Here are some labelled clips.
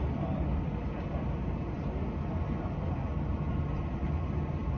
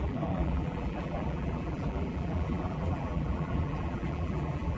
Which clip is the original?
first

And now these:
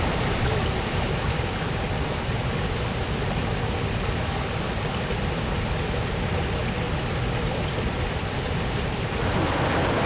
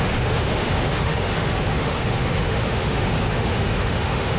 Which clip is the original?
first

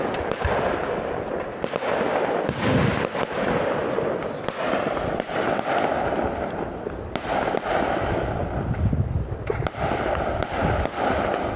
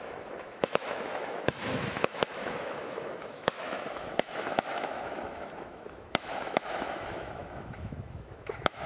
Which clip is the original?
first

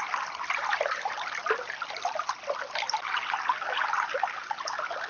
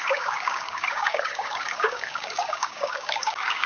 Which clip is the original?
first